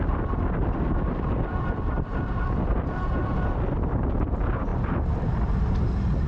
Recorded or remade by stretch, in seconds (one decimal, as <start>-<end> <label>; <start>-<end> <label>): 0.0-6.3 recorded